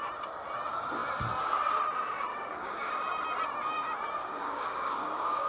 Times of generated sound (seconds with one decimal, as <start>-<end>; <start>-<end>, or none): 2.3-2.9; 4.2-5.5